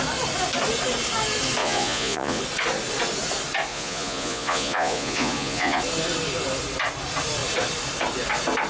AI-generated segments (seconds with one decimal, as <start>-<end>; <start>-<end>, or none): 1.6-2.4; 3.7-5.8